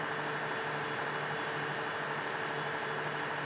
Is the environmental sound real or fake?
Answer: real